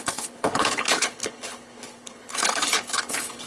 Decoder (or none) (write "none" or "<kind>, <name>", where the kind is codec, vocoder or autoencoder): codec, HILCodec